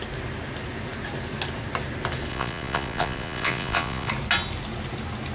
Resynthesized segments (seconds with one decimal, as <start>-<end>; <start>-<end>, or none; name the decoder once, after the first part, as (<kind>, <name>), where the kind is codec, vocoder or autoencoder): 2.3-4.1 (vocoder, Vocos)